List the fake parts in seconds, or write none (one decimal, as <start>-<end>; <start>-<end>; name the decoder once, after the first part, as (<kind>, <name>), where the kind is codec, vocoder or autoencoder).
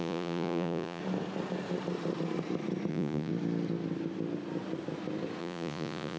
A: 0.0-1.0 (vocoder, Vocos); 2.9-3.3; 5.4-6.2